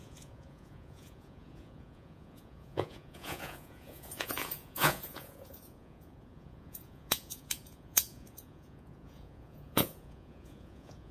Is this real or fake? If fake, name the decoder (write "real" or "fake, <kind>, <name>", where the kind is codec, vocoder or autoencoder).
fake, vocoder, Vocos